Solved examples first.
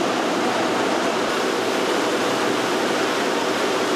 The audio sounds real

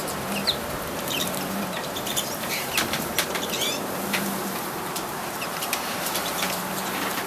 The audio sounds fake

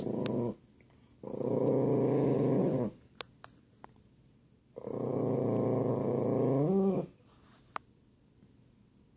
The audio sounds real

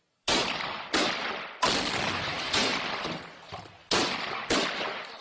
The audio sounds real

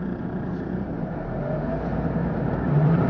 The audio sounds fake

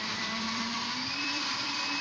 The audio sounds fake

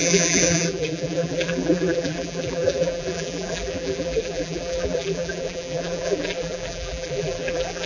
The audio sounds fake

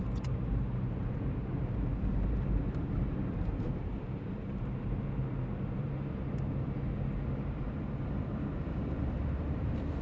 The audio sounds fake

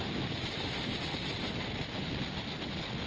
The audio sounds real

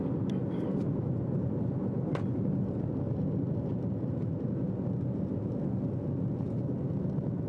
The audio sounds real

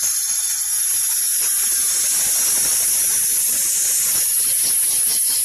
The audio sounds real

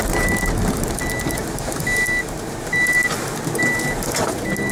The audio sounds real